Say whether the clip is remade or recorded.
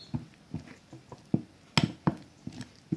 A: recorded